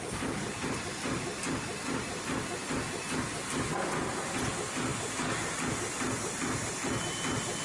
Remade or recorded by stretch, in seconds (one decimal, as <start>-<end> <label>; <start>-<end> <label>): 0.0-7.6 recorded